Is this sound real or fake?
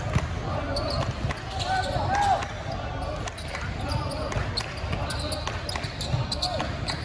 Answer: real